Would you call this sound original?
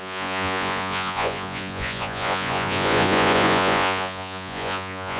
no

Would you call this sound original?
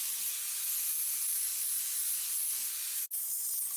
yes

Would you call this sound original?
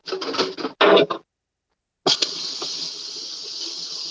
yes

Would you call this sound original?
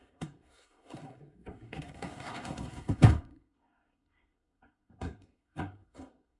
no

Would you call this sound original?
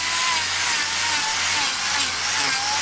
yes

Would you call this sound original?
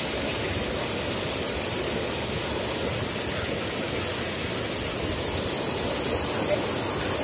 yes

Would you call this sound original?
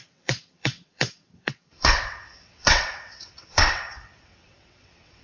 no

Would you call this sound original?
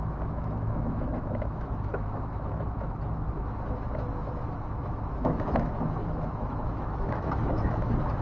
no